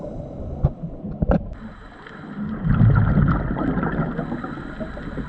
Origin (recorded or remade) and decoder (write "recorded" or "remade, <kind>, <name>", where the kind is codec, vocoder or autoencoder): recorded